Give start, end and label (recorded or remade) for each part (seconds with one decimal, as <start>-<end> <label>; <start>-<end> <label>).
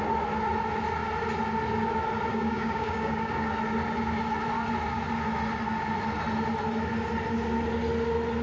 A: 0.0-2.3 recorded; 2.3-3.5 remade; 3.5-8.4 recorded